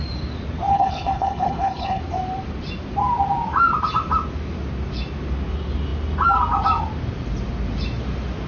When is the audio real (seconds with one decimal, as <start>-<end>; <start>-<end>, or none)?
0.0-0.7; 2.0-8.5